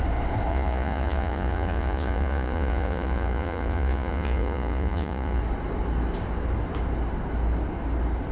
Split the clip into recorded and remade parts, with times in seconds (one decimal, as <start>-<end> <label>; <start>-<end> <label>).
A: 0.0-0.5 recorded; 0.5-5.4 remade; 5.4-8.3 recorded